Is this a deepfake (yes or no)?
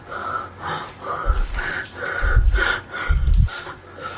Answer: no